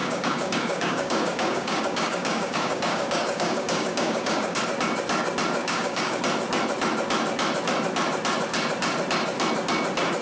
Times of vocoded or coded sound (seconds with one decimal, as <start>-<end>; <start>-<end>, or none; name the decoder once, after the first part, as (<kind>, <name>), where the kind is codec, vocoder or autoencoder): 0.0-4.6 (codec, DAC); 5.6-6.2